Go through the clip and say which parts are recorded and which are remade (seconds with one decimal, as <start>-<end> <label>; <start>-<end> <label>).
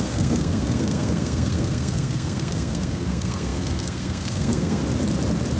0.0-4.8 remade; 4.8-5.6 recorded